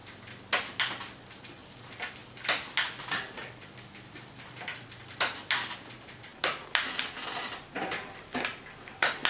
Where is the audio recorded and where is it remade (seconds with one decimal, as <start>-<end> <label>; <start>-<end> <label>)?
0.0-9.3 recorded

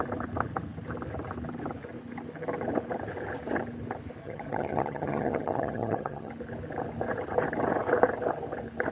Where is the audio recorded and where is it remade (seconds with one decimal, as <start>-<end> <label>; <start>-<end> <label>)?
0.0-4.2 recorded; 4.2-6.3 remade; 6.3-8.9 recorded

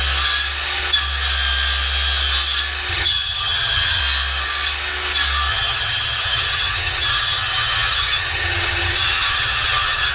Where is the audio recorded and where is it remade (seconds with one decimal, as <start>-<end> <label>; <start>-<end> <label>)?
0.0-2.9 recorded; 2.9-4.0 remade; 4.0-5.5 recorded; 5.5-10.1 remade